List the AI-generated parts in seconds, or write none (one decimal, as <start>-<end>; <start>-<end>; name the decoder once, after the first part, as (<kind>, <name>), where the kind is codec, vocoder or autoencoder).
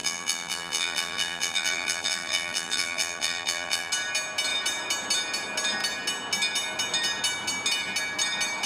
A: 0.0-3.9 (vocoder, BigVGAN v2)